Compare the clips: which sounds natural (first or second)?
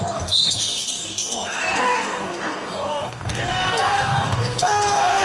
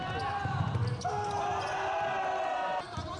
second